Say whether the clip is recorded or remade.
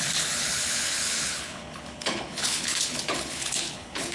remade